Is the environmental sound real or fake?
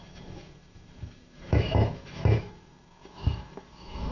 fake